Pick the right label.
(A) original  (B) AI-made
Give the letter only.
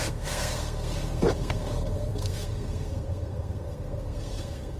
B